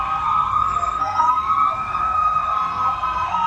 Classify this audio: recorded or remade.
remade